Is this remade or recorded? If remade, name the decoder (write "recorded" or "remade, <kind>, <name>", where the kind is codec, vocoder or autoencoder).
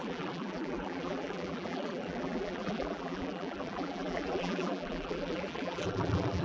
remade, vocoder, BigVGAN v2